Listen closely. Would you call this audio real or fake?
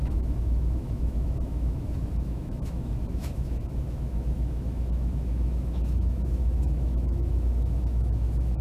fake